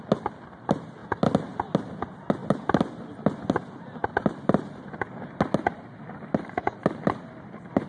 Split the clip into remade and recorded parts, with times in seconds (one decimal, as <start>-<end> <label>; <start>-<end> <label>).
0.0-2.4 recorded; 2.4-4.7 remade; 4.7-7.9 recorded